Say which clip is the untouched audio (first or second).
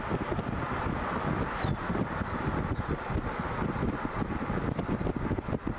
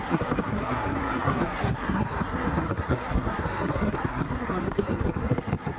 first